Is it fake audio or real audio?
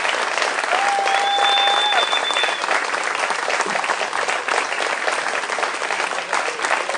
real